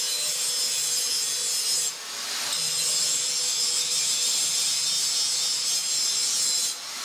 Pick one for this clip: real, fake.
real